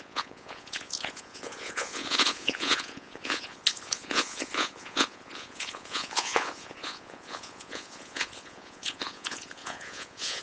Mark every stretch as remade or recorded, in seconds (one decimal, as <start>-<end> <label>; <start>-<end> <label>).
0.0-10.4 remade